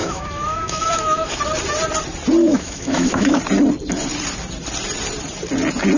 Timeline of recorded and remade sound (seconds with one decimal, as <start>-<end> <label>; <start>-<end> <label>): 0.0-1.4 remade; 1.4-2.4 recorded; 2.4-3.4 remade; 3.4-6.0 recorded